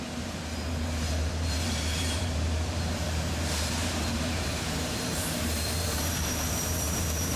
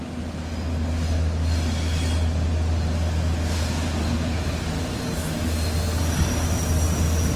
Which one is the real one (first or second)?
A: second